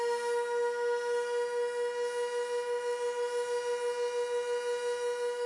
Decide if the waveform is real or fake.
real